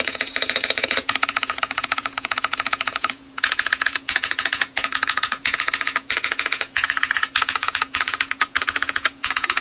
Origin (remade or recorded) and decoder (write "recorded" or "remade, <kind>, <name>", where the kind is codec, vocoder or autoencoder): remade, vocoder, Vocos